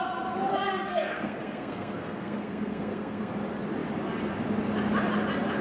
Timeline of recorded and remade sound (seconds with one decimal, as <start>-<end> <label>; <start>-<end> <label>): 0.0-0.5 recorded; 0.5-3.3 remade; 3.3-5.6 recorded